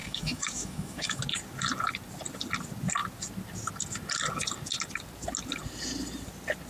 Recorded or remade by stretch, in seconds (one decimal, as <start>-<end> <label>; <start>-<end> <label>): 0.0-1.2 remade; 1.2-6.7 recorded